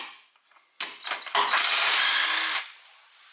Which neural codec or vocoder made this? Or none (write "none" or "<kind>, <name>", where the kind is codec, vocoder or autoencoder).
none